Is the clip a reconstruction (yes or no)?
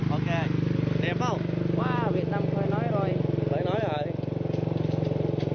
no